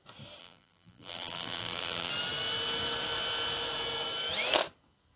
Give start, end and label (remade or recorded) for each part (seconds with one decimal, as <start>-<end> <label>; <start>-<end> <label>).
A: 0.0-0.4 recorded; 0.4-2.1 remade; 2.1-5.2 recorded